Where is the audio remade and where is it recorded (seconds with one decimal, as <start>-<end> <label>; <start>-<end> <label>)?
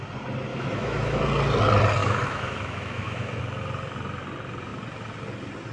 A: 0.0-0.5 recorded; 0.5-1.2 remade; 1.2-2.0 recorded; 2.0-3.4 remade; 3.4-5.7 recorded